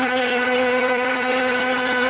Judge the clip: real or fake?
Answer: fake